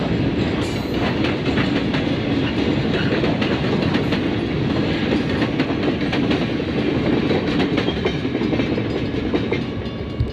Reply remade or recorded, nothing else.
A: recorded